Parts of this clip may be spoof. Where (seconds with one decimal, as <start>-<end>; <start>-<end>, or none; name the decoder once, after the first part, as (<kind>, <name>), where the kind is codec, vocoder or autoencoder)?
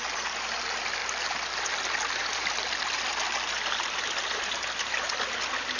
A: none